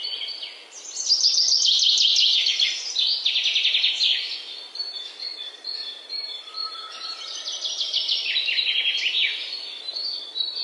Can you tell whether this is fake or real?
fake